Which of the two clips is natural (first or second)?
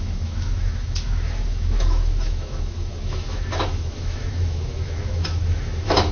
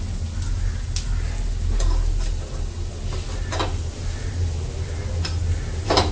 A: second